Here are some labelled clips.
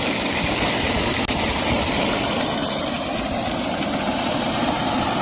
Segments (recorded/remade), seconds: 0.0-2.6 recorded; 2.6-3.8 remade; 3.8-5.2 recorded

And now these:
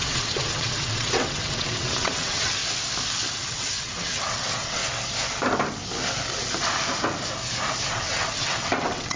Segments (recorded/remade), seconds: 0.0-2.6 remade; 2.6-3.3 recorded; 3.3-4.8 remade; 4.8-7.9 recorded; 7.9-9.2 remade

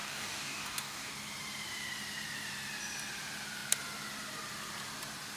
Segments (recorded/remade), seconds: 0.0-1.1 remade; 1.1-5.4 recorded

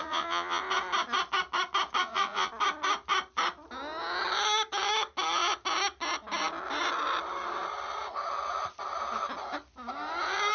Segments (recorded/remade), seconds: 0.0-0.6 remade; 0.6-2.0 recorded; 2.0-2.5 remade; 2.5-10.5 recorded

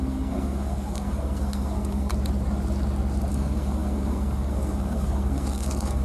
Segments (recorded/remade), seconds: 0.0-2.1 remade; 2.1-3.3 recorded; 3.3-6.0 remade

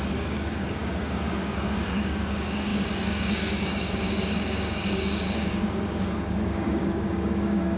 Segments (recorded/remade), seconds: 0.0-7.8 remade